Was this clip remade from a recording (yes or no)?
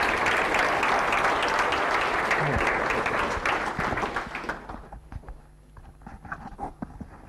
no